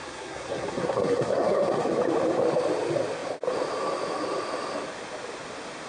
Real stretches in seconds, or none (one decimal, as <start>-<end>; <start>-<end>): 1.9-5.9